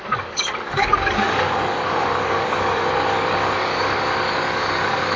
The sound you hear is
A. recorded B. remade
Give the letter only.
B